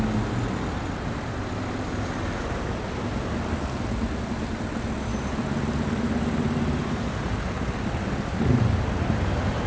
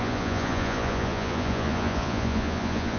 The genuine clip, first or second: first